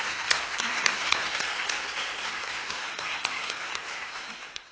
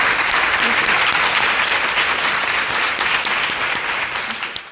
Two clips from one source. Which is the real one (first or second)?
second